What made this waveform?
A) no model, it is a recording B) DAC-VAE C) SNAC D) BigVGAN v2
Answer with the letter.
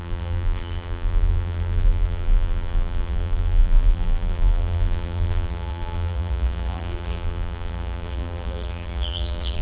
D